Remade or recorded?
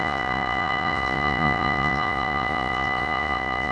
remade